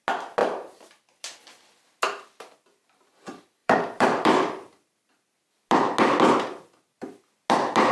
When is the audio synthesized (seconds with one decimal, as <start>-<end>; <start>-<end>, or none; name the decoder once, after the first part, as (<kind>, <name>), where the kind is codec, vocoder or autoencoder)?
0.4-1.2 (vocoder, BigVGAN v2); 3.6-5.1